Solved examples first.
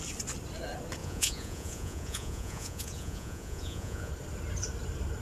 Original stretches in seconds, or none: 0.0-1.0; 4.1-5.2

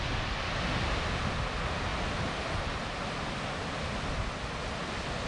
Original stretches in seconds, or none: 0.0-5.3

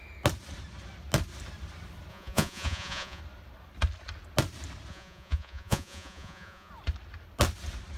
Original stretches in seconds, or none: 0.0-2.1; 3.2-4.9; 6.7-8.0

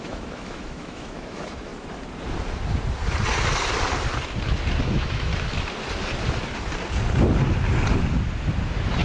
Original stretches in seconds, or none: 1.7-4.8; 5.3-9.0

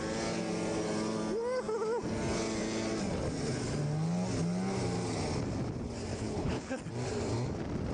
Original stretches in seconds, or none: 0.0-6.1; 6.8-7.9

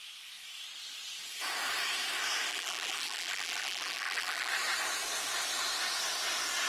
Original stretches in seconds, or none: 0.0-2.5; 4.5-6.7